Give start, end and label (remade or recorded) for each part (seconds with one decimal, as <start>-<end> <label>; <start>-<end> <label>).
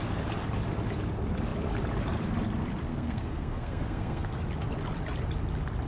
0.0-2.9 recorded; 2.9-4.4 remade; 4.4-5.9 recorded